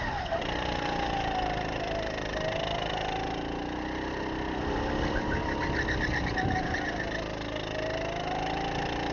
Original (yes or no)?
yes